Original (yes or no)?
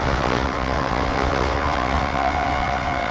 no